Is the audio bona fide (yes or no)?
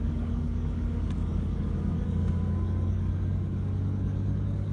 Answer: no